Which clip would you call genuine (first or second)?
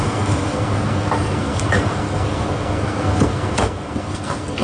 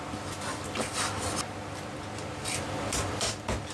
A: second